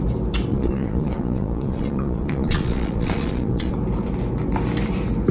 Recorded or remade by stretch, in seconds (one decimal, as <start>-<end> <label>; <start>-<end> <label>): 0.0-0.5 recorded; 0.5-3.7 remade; 3.7-5.3 recorded

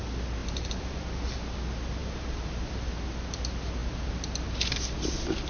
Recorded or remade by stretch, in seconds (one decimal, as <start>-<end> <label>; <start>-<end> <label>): 0.0-0.4 recorded; 0.4-1.2 remade; 1.2-2.0 recorded; 2.0-2.9 remade; 2.9-5.5 recorded

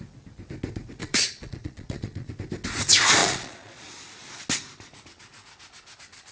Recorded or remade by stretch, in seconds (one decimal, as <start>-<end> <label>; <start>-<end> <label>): 0.0-1.0 recorded; 1.0-2.3 remade; 2.3-3.2 recorded; 3.2-3.9 remade; 3.9-6.3 recorded

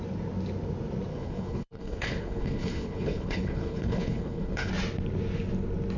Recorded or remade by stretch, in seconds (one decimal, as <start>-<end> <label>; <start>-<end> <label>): 0.0-1.1 recorded; 1.1-4.7 remade; 4.7-6.0 recorded

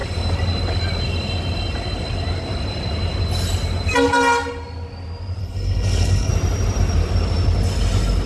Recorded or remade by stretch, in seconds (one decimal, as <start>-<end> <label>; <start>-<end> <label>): 0.0-5.4 recorded; 5.4-6.3 remade; 6.3-8.3 recorded

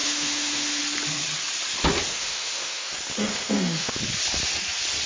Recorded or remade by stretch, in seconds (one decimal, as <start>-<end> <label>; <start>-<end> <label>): 0.0-0.8 remade; 0.8-2.1 recorded; 2.1-2.9 remade; 2.9-3.3 recorded; 3.3-4.0 remade; 4.0-5.1 recorded